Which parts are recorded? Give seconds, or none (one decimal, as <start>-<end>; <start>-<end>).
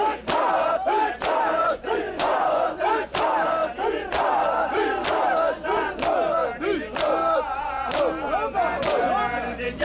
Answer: 0.0-1.6; 2.9-9.8